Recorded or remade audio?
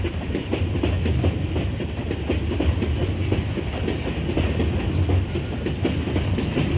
recorded